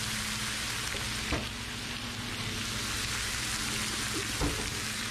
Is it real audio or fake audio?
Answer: real